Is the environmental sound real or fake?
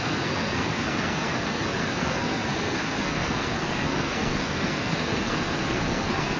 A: fake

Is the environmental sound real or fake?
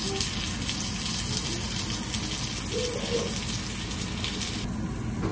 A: real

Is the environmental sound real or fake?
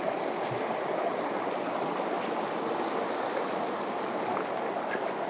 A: real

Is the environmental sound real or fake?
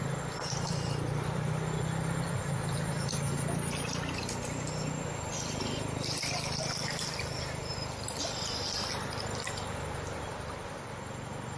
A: real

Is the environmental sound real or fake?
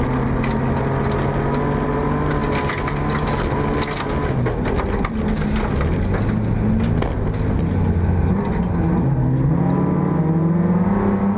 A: real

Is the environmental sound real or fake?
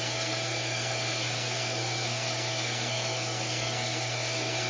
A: fake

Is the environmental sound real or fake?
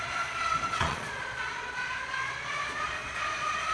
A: fake